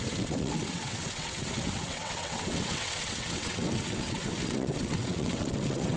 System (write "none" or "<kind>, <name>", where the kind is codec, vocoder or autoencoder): vocoder, WaveNeXt